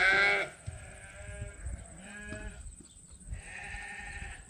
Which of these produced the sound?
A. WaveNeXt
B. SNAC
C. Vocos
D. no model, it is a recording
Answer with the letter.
D